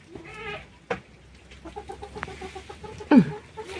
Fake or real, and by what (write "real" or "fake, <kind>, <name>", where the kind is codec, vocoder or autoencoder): real